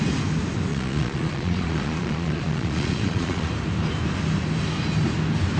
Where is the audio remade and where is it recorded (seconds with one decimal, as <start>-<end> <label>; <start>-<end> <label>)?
0.0-0.7 recorded; 0.7-3.5 remade; 3.5-5.6 recorded